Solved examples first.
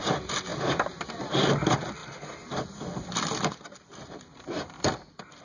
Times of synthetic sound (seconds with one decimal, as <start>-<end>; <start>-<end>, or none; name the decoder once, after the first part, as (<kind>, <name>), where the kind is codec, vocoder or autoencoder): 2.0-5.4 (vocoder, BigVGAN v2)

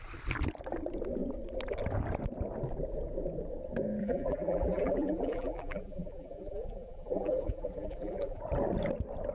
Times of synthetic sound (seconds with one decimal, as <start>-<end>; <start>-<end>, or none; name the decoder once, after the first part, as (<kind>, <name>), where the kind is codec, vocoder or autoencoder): 4.0-8.4 (vocoder, BigVGAN v2)

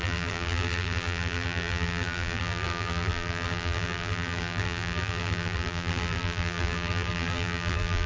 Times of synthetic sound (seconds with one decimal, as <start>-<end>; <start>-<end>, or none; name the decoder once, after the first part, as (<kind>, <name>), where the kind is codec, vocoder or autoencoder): 0.0-8.1 (vocoder, BigVGAN v2)

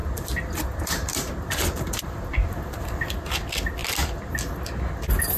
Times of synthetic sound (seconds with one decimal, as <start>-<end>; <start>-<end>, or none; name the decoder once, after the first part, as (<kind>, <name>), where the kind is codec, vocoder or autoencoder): 0.0-3.2 (vocoder, BigVGAN v2); 3.8-4.3

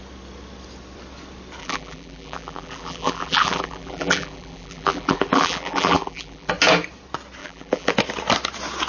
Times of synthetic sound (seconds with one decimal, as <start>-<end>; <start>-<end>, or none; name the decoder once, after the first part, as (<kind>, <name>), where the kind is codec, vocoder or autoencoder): 1.6-6.5 (vocoder, BigVGAN v2); 7.4-7.9

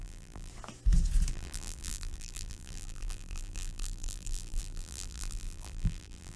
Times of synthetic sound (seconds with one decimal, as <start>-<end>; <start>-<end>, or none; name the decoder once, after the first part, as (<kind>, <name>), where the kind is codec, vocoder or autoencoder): 0.0-0.5 (vocoder, BigVGAN v2); 1.3-6.4

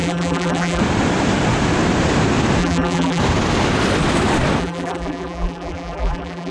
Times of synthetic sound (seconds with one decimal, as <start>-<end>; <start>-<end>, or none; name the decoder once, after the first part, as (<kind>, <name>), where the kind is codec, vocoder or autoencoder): 0.0-0.8 (vocoder, BigVGAN v2); 2.6-3.2; 4.6-6.5